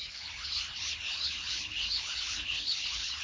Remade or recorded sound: remade